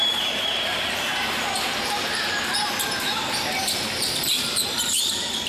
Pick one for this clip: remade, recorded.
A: remade